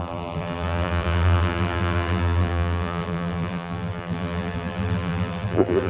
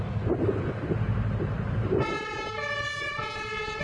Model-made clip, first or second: first